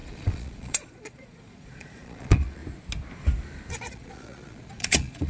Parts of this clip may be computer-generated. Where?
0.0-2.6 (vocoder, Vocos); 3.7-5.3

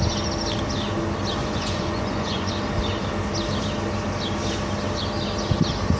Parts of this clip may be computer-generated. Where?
1.4-2.5 (vocoder, Vocos)

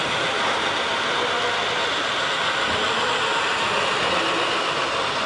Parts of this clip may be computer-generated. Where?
none

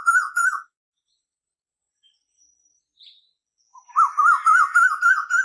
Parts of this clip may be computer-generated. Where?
0.4-3.1 (vocoder, BigVGAN v2); 3.7-5.0

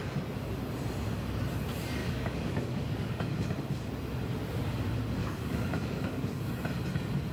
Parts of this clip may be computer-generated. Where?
2.0-3.9 (codec, DAC); 5.2-6.5

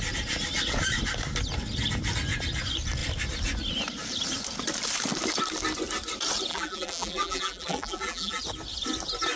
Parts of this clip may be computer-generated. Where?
6.5-8.4 (vocoder, BigVGAN v2)

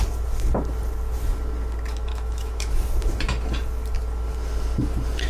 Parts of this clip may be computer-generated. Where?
2.1-2.7 (autoencoder, DAC-VAE)